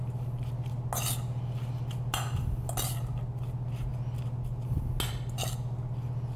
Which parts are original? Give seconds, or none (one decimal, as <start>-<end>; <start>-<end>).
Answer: 0.0-6.4